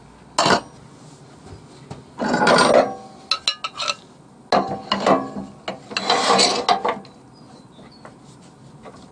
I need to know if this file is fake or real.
real